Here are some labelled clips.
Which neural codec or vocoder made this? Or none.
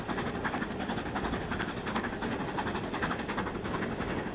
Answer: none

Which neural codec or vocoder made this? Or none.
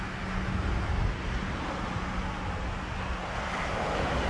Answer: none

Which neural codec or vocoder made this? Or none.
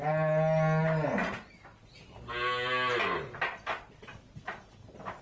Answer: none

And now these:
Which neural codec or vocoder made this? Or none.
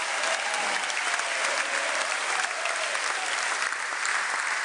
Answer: none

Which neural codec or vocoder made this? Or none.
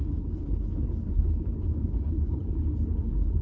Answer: codec, HILCodec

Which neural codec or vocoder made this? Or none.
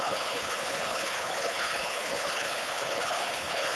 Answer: codec, HILCodec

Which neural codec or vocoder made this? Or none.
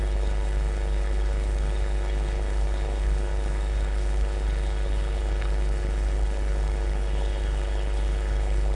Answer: codec, HILCodec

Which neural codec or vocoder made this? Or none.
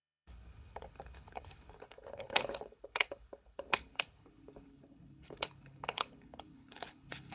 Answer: codec, HILCodec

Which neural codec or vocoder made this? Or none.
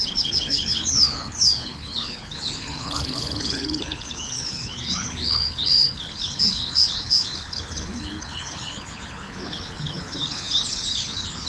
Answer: codec, HILCodec